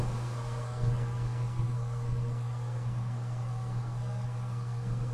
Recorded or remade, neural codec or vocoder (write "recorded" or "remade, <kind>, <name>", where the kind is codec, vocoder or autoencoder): remade, codec, SNAC